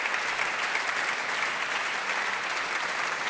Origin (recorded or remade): recorded